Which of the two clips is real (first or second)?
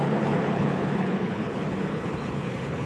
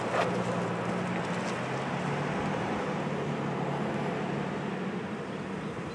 second